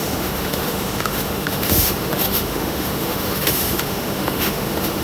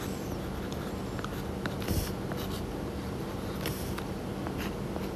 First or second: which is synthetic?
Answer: first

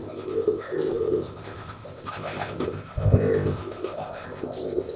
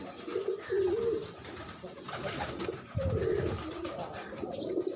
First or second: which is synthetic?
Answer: first